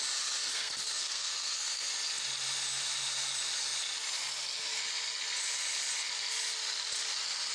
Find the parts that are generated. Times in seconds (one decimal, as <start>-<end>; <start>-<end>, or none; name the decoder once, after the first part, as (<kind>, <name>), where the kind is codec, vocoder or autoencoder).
0.5-1.9 (codec, SNAC)